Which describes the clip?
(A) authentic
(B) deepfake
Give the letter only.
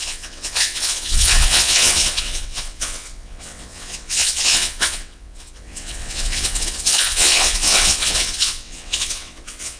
B